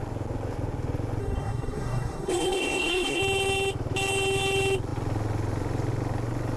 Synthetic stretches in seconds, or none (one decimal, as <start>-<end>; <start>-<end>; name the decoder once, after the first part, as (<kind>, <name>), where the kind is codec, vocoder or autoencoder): 1.2-3.2 (codec, SNAC)